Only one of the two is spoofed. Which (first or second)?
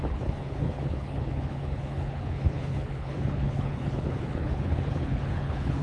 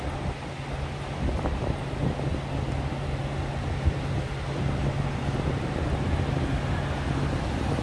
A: first